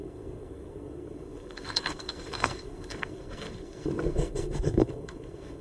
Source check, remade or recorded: remade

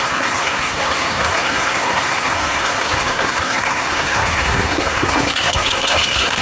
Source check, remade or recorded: remade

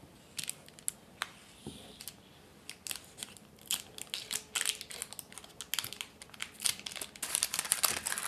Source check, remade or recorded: recorded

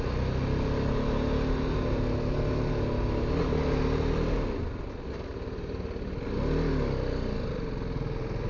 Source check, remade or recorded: recorded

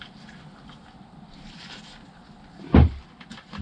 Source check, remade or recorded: recorded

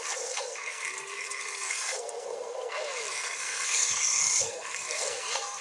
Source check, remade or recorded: remade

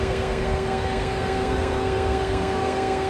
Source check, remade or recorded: remade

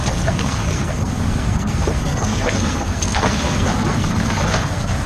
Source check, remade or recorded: remade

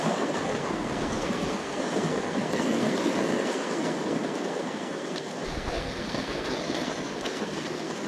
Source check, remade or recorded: remade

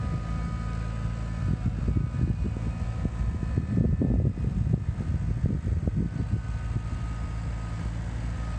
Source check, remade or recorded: recorded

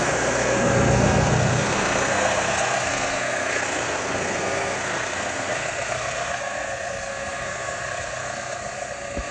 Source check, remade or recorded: remade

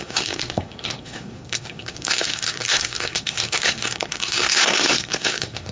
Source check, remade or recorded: remade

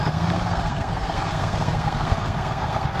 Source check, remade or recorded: remade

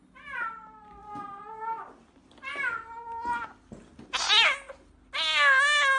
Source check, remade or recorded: recorded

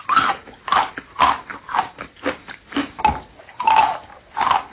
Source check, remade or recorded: recorded